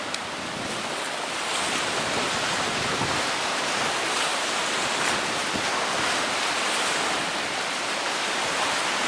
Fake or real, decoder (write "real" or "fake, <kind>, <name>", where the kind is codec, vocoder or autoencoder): real